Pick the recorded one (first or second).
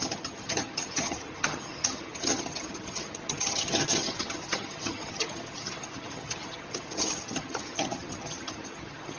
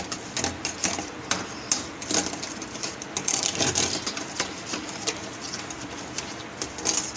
second